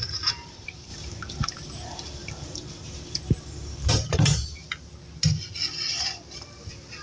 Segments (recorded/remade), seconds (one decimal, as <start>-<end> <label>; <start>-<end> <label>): 0.0-4.6 remade; 4.6-7.0 recorded

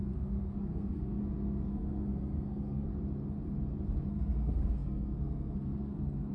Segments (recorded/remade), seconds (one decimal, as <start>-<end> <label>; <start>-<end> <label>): 0.0-1.2 remade; 1.2-1.7 recorded; 1.7-2.9 remade; 2.9-4.1 recorded; 4.1-6.3 remade

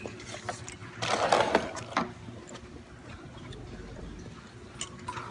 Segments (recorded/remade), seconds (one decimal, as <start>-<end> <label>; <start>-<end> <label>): 0.0-5.3 recorded

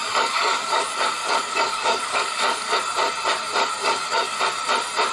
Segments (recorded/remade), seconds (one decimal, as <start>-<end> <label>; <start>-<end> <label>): 0.0-2.8 remade; 2.8-3.8 recorded; 3.8-4.4 remade; 4.4-5.1 recorded

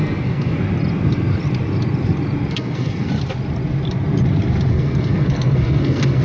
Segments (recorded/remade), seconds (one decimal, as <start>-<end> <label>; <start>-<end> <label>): 0.0-0.6 remade; 0.6-2.5 recorded; 2.5-3.1 remade; 3.1-4.7 recorded; 4.7-6.2 remade

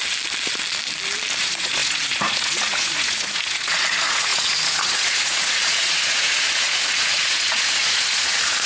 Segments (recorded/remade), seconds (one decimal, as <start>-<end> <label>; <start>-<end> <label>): 0.0-1.4 recorded; 1.4-8.7 remade

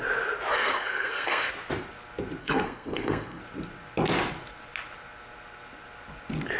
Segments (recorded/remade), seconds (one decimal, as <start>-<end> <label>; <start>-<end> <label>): 0.0-0.5 recorded; 0.5-1.5 remade; 1.5-2.4 recorded; 2.4-3.4 remade; 3.4-6.6 recorded

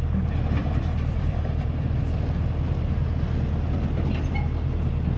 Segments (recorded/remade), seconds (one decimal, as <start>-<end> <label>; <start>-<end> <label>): 0.0-0.6 recorded; 0.6-2.0 remade; 2.0-5.2 recorded